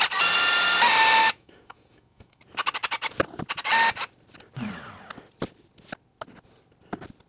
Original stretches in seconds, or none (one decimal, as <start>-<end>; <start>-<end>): 0.0-1.2; 2.4-7.3